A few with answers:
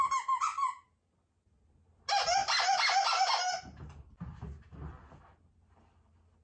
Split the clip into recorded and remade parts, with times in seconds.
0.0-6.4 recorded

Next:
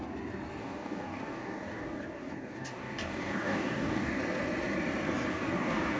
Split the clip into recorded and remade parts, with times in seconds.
0.0-0.6 recorded; 0.6-4.2 remade; 4.2-5.3 recorded; 5.3-6.0 remade